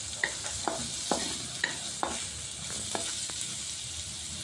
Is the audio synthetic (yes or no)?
no